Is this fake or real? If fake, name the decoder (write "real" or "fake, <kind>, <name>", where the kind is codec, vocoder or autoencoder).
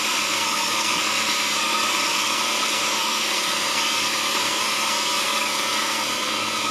fake, codec, SNAC